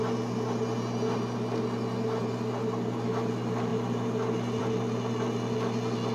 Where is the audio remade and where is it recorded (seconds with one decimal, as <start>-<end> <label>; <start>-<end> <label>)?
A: 0.0-6.1 recorded